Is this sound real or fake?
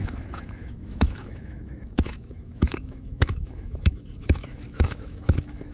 fake